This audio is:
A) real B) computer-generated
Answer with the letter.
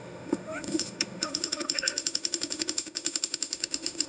B